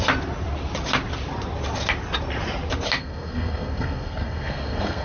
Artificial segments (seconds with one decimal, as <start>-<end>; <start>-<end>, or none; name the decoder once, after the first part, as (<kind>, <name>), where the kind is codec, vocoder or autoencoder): 3.0-5.0 (codec, SNAC)